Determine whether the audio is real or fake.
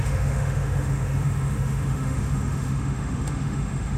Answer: fake